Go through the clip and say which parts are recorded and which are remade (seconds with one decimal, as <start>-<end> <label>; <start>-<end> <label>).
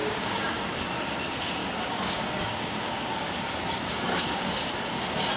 0.0-0.8 remade; 0.8-1.6 recorded; 1.6-3.3 remade; 3.3-4.1 recorded; 4.1-4.7 remade; 4.7-5.4 recorded